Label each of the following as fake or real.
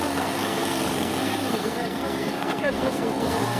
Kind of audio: fake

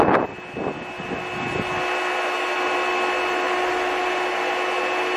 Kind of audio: real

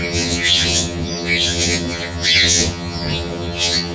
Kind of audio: fake